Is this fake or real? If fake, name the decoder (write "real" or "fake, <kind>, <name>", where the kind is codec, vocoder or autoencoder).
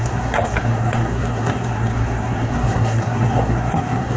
fake, codec, SNAC